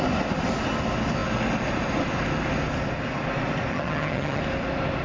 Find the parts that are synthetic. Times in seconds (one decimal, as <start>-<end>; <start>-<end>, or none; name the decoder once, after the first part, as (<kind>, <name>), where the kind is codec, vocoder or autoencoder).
3.7-4.4 (vocoder, HiFi-GAN)